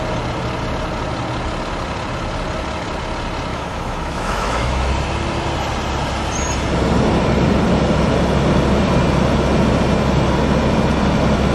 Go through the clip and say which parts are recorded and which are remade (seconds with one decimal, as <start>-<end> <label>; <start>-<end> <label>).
0.0-3.5 recorded; 3.5-4.9 remade; 4.9-11.5 recorded